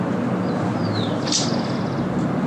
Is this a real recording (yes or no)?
yes